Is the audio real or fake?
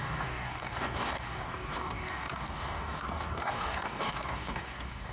fake